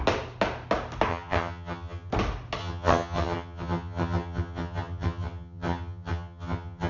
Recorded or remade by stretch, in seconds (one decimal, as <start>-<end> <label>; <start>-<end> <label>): 0.0-1.1 recorded; 1.1-2.1 remade; 2.1-2.6 recorded; 2.6-6.9 remade